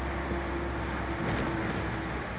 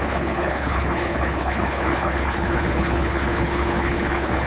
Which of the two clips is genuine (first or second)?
first